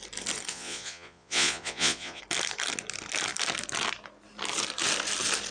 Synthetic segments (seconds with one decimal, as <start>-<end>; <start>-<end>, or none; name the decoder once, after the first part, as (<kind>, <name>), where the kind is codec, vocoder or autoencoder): 0.5-2.2 (vocoder, Vocos)